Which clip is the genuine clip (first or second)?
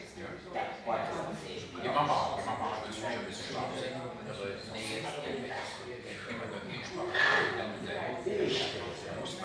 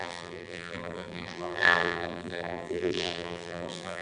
first